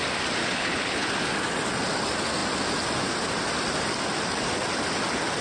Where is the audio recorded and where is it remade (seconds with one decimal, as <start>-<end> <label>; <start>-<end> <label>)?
0.0-0.4 recorded; 0.4-1.1 remade; 1.1-5.4 recorded